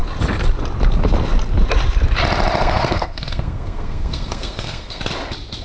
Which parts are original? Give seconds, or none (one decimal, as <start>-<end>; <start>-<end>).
0.0-2.6; 5.0-5.6